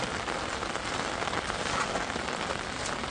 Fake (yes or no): no